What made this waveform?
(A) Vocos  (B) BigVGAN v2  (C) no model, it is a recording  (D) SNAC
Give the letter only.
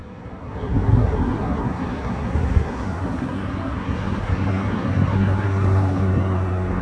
D